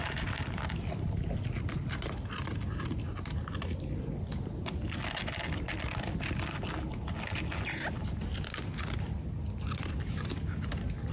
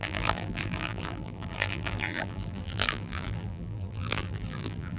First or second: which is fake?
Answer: second